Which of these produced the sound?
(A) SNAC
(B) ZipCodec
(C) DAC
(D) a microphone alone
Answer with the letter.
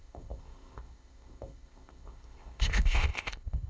B